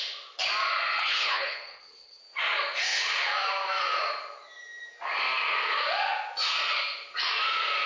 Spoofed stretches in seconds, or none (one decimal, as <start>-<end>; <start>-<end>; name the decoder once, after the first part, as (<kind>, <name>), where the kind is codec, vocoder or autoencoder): 1.0-2.2 (codec, HILCodec)